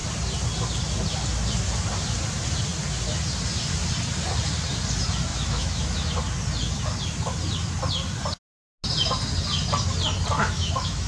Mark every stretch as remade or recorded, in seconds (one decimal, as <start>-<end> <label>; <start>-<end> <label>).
0.0-5.3 recorded; 5.3-6.2 remade; 6.2-10.4 recorded; 10.4-11.1 remade